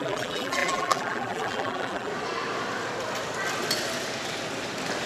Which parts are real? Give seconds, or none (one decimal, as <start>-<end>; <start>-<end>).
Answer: 2.1-5.1